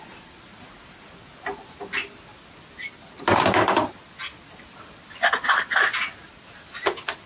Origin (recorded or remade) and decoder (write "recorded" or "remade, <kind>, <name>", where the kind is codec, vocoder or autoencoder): recorded